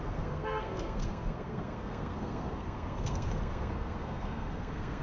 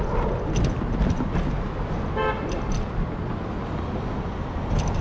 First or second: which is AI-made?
first